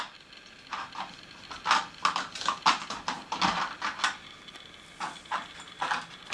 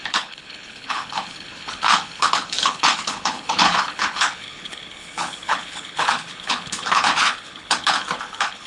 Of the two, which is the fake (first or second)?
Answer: second